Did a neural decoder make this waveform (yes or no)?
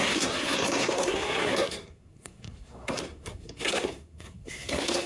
yes